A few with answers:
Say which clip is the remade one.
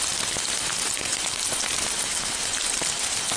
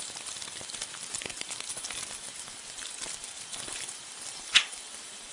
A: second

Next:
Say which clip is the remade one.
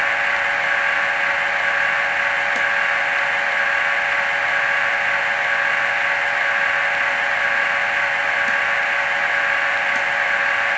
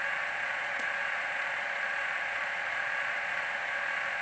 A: second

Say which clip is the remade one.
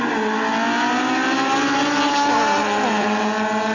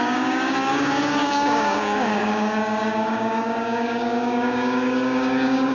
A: second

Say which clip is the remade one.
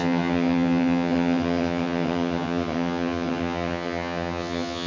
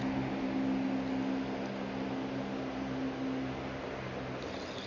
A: first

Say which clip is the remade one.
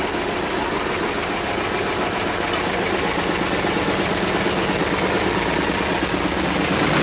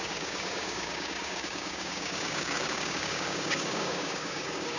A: second